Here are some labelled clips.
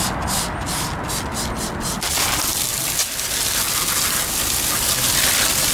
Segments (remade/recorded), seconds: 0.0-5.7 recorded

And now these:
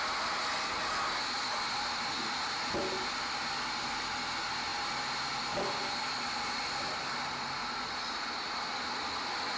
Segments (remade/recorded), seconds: 0.0-9.6 recorded

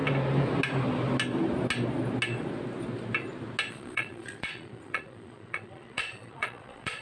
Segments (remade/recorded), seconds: 0.0-3.7 recorded; 3.7-7.0 remade

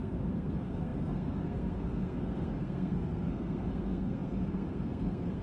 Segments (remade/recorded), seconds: 0.0-5.4 remade

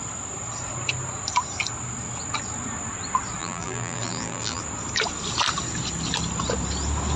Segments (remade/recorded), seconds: 0.0-3.4 recorded; 3.4-4.6 remade; 4.6-7.2 recorded

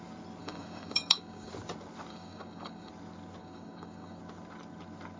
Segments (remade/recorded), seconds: 0.0-0.4 recorded; 0.4-1.5 remade; 1.5-2.1 recorded; 2.1-2.9 remade; 2.9-3.4 recorded; 3.4-4.2 remade; 4.2-5.2 recorded